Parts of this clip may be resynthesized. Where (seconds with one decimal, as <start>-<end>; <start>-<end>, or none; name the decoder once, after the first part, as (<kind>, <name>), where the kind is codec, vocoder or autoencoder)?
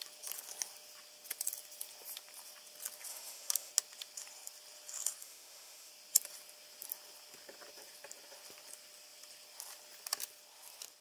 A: 3.1-3.7 (autoencoder, DAC-VAE); 5.2-5.9